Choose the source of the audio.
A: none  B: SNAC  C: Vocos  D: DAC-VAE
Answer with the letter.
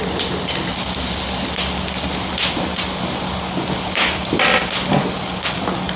A